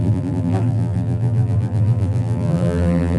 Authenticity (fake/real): fake